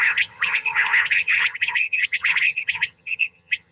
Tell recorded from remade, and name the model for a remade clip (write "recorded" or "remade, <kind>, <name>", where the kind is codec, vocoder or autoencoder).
remade, vocoder, HiFi-GAN